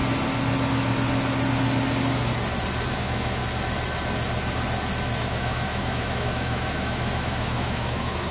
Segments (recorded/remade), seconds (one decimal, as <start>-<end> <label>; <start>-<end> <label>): 0.0-2.9 recorded; 2.9-3.4 remade; 3.4-5.2 recorded; 5.2-8.3 remade